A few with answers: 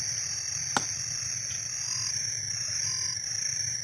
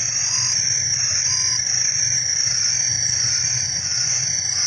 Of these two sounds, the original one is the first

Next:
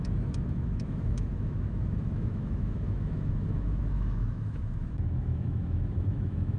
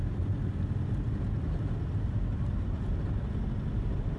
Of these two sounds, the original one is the second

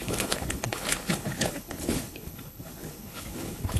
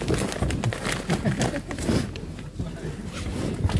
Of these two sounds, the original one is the second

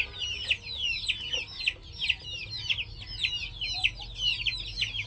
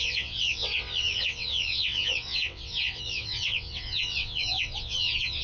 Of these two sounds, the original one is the first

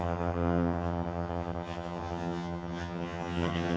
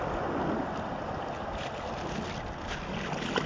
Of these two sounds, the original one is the second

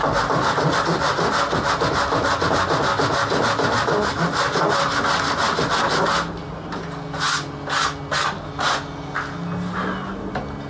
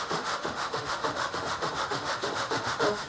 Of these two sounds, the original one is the first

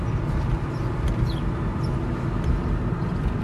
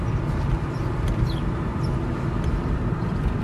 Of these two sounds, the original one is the first